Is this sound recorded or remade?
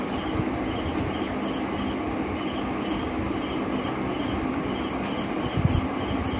recorded